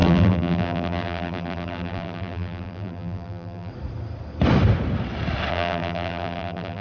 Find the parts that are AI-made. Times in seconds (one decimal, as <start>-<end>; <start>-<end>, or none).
0.0-3.7; 5.5-6.8